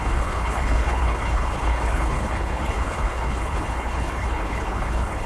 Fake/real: fake